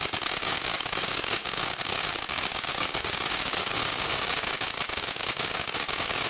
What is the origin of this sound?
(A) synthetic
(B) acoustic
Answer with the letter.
A